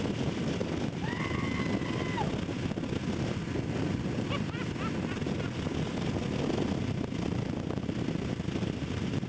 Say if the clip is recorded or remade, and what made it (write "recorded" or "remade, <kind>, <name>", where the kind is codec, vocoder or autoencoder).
recorded